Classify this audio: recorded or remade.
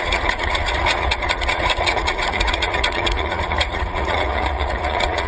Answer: remade